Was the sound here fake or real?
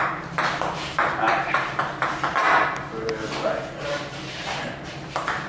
fake